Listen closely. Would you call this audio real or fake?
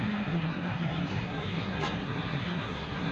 fake